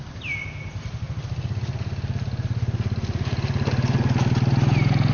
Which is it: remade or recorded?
recorded